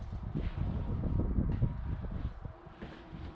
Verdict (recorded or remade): recorded